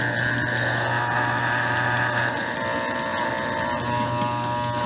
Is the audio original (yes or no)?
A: yes